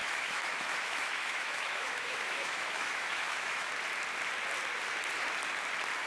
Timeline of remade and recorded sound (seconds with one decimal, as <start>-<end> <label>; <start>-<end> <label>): 0.0-3.7 remade; 3.7-6.1 recorded